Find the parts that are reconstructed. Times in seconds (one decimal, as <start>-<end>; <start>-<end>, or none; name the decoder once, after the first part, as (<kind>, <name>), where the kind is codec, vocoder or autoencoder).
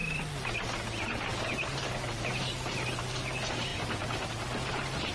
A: none